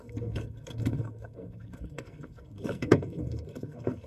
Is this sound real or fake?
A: fake